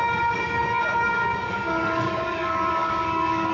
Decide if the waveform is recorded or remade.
remade